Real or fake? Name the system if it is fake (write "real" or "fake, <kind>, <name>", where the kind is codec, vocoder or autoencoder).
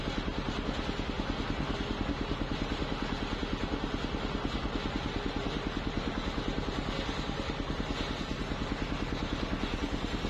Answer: real